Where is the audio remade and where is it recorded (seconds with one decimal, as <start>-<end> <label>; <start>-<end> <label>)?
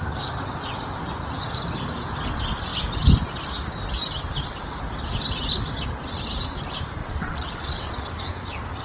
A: 0.0-7.0 recorded; 7.0-8.1 remade; 8.1-8.8 recorded